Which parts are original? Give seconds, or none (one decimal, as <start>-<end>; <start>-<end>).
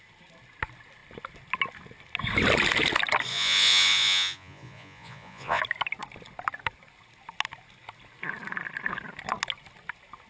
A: 0.0-3.3; 5.6-10.3